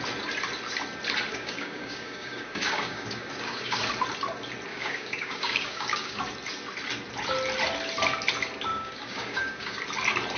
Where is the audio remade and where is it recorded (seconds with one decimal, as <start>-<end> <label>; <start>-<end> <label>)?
0.0-1.3 recorded; 1.3-3.8 remade; 3.8-4.7 recorded; 4.7-6.2 remade; 6.2-8.7 recorded; 8.7-9.8 remade; 9.8-10.4 recorded